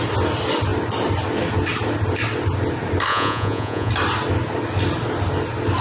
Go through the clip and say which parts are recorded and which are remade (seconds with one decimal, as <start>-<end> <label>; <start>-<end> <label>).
0.0-3.1 recorded; 3.1-3.9 remade; 3.9-5.8 recorded